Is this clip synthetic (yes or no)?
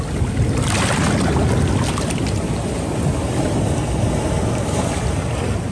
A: no